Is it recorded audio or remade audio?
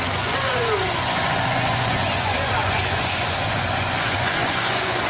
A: remade